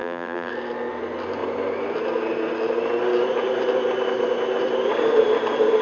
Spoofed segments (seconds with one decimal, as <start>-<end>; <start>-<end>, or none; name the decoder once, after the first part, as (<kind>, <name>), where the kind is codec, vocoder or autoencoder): 0.0-0.5 (vocoder, BigVGAN v2)